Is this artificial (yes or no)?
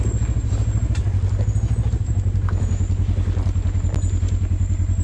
no